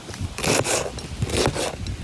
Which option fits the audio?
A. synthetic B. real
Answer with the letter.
B